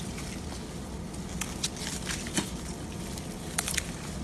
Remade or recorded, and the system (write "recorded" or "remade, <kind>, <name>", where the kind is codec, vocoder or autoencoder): recorded